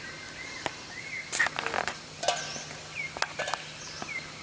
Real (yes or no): yes